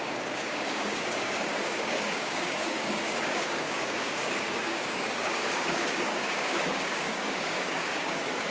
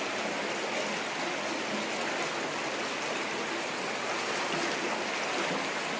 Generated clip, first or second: first